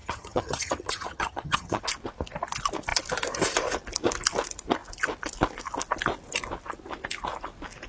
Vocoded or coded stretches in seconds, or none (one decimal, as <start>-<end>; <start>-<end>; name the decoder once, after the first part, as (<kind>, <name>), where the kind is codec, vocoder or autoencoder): 0.0-1.8 (vocoder, HiFi-GAN)